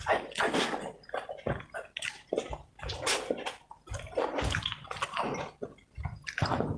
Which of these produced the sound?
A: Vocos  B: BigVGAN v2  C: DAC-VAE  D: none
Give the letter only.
D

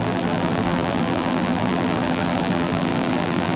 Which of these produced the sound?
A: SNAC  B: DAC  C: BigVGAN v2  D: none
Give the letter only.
C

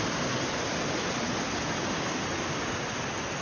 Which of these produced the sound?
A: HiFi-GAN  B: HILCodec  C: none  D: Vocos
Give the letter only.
C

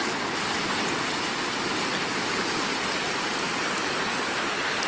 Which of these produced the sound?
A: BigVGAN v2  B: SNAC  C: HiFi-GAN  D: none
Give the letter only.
D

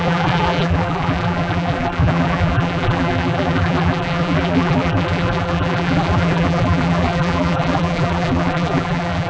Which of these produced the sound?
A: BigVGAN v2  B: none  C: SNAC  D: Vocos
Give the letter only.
A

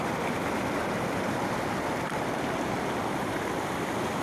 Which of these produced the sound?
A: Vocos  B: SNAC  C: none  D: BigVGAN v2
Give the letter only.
C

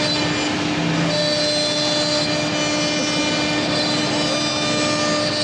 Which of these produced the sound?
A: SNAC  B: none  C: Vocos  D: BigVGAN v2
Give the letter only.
B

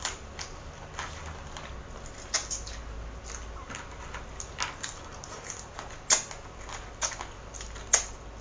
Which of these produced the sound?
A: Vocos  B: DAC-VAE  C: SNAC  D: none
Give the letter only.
D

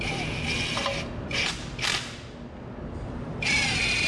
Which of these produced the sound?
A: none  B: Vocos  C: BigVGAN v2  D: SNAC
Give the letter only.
A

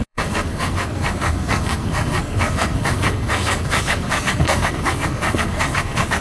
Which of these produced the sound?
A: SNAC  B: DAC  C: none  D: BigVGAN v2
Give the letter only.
A